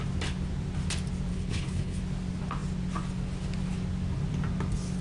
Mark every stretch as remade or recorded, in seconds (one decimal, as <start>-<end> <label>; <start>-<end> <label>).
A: 0.0-1.3 recorded; 1.3-2.0 remade; 2.0-5.0 recorded